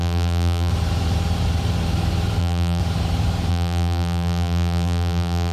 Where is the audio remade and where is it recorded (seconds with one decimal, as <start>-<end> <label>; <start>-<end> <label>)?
0.0-0.7 remade; 0.7-2.4 recorded; 2.4-2.8 remade; 2.8-3.5 recorded; 3.5-5.5 remade